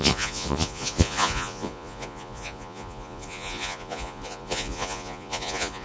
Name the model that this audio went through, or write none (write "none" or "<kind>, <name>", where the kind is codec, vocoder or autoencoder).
vocoder, Vocos